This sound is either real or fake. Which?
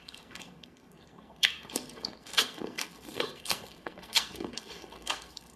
fake